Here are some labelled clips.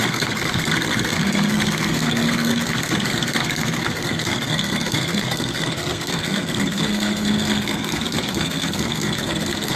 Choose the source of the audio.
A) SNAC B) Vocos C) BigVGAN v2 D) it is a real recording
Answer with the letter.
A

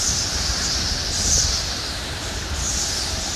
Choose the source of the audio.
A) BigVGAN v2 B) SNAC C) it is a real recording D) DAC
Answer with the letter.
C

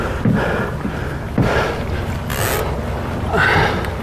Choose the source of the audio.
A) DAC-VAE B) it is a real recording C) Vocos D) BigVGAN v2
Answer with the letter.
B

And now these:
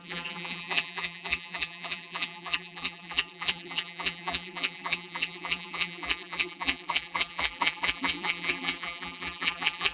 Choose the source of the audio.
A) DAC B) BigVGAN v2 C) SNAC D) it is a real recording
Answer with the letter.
B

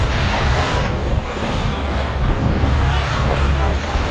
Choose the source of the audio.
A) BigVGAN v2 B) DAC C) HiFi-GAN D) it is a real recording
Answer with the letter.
B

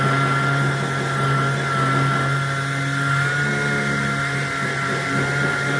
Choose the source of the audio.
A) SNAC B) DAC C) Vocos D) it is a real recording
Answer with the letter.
D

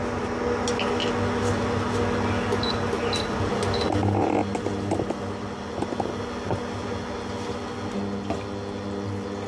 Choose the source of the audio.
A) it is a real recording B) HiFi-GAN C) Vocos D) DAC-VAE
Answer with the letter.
A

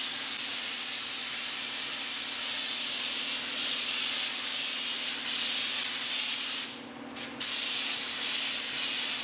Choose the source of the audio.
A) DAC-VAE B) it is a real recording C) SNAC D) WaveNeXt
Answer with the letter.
B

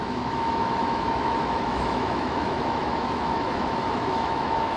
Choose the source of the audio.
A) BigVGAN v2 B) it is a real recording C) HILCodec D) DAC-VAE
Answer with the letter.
D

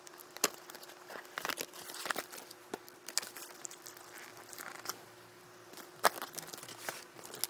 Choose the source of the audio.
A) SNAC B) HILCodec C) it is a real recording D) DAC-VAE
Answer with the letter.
C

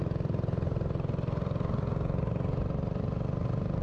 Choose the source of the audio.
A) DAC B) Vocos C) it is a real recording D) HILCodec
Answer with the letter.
C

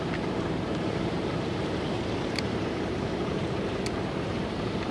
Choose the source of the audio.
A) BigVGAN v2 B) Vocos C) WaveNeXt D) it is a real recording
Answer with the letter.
A